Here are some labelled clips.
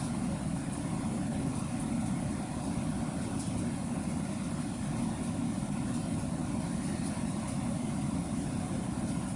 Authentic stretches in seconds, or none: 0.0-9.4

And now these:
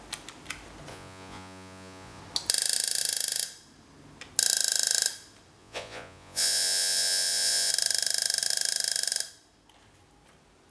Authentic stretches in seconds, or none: 0.0-0.9; 2.2-5.6; 7.7-10.7

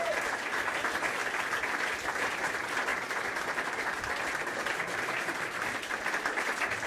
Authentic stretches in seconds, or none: 0.0-6.9

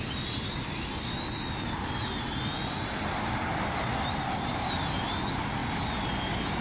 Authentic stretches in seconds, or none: 0.0-6.6

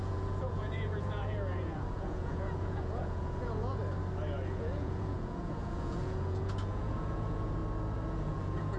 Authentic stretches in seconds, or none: 3.8-4.6; 7.6-8.1

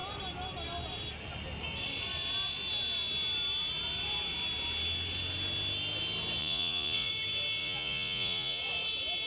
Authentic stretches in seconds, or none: 0.0-6.4; 7.1-7.6; 8.6-9.3

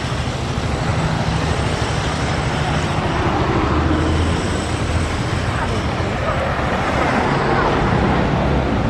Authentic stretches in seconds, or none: 0.0-8.9

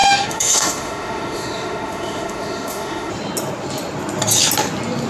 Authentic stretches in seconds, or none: 3.1-5.1